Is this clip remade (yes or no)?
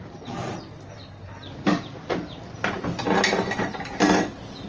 no